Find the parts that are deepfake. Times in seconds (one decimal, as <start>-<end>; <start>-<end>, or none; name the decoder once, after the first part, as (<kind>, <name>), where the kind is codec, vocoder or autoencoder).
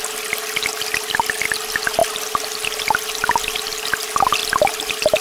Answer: none